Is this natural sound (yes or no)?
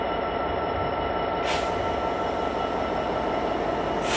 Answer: yes